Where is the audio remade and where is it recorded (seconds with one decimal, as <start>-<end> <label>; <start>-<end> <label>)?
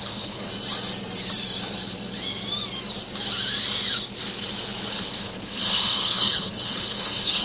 0.0-0.5 remade; 0.5-4.9 recorded; 4.9-7.4 remade